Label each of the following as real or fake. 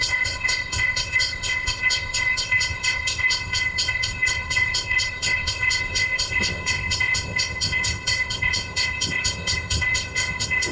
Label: fake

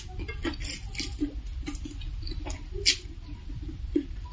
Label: real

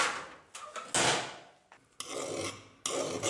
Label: real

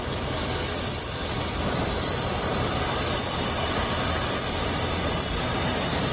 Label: fake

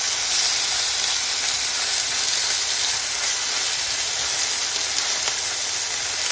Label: real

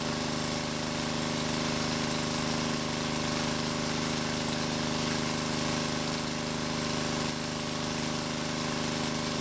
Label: real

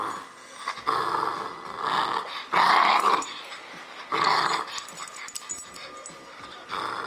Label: real